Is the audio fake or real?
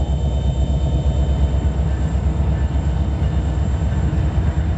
real